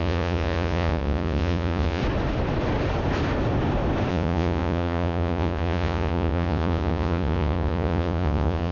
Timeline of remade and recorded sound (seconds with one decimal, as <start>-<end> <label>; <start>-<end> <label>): 0.0-2.0 remade; 2.0-4.1 recorded; 4.1-8.7 remade